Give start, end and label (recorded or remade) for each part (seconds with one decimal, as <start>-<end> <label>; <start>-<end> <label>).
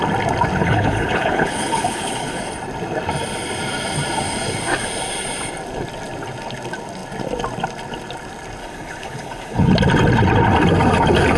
0.0-0.6 recorded; 0.6-2.4 remade; 2.4-8.6 recorded; 8.6-9.7 remade; 9.7-11.4 recorded